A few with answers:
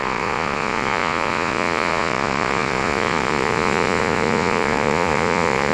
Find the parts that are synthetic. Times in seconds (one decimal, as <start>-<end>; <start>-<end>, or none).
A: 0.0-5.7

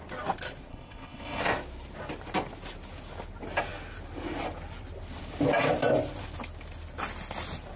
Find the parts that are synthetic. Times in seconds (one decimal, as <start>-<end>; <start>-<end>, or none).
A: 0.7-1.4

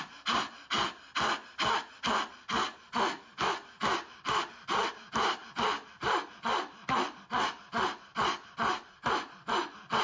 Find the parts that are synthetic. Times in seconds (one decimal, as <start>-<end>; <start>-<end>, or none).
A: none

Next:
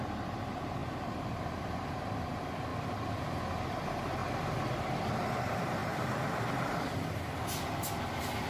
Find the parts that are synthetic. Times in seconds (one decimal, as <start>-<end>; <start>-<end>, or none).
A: 0.0-0.8; 1.6-2.7; 3.5-4.2; 4.7-5.8; 8.0-8.5

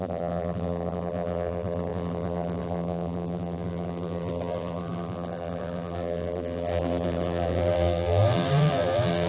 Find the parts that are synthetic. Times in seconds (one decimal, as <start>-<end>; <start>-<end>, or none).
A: 0.0-9.3

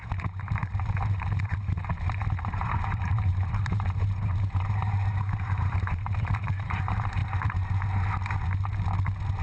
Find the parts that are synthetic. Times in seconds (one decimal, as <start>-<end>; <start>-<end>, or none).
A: 0.0-7.2